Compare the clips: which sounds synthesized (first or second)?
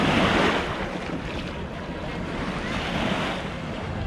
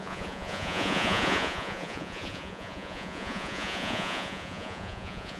second